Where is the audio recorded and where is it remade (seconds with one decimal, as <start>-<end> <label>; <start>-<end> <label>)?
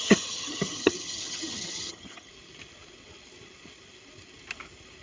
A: 0.0-2.3 remade; 2.3-5.0 recorded